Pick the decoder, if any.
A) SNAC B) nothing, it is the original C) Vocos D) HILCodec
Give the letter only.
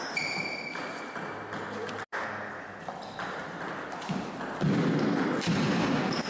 B